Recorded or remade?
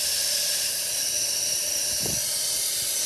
recorded